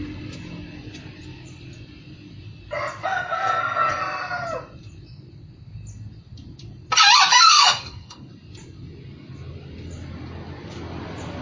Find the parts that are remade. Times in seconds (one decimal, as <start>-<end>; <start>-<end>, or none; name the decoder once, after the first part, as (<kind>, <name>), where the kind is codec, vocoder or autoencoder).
3.0-4.0 (codec, SNAC); 7.3-8.3